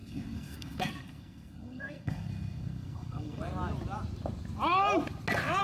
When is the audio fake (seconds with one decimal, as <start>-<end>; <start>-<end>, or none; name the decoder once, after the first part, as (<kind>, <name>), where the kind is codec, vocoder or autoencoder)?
0.0-3.4 (codec, SNAC)